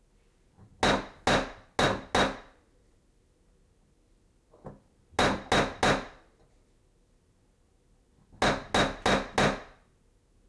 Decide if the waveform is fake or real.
real